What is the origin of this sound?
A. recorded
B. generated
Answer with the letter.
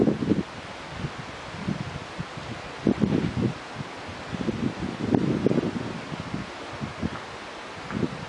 A